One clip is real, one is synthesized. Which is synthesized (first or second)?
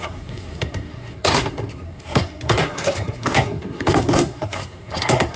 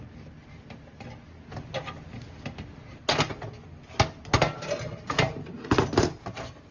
first